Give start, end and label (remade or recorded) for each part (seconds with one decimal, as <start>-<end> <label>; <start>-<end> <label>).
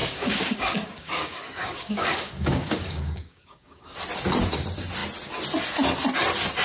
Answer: 0.0-4.0 remade; 4.0-6.6 recorded